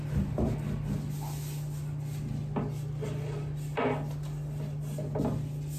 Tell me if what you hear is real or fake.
real